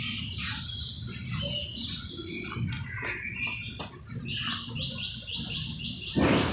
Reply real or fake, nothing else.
real